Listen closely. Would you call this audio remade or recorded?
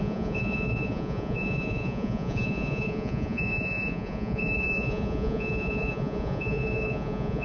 remade